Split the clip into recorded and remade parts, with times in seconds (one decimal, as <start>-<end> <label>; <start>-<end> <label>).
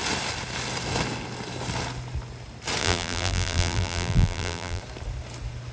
0.0-2.8 recorded; 2.8-4.8 remade; 4.8-5.7 recorded